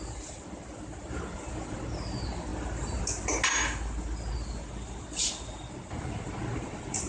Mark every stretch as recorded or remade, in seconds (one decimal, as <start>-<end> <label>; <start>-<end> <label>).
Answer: 0.0-7.1 recorded